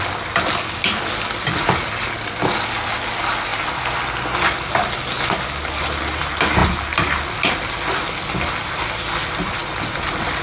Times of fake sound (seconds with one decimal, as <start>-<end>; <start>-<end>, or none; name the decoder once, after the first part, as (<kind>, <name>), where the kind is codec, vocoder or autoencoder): none